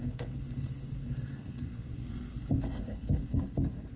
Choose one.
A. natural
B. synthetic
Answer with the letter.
B